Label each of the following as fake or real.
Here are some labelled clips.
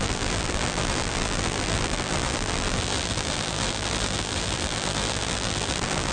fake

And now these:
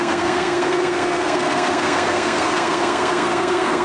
fake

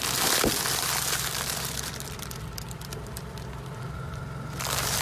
fake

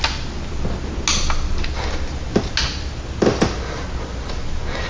real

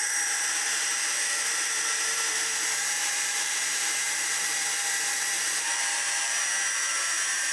fake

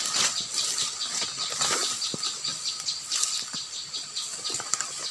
real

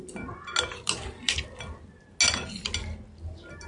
real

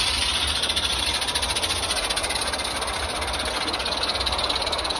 real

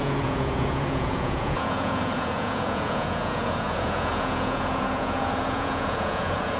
fake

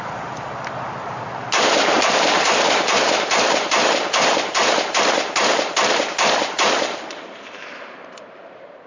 fake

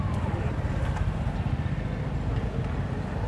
real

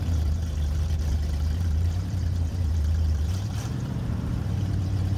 fake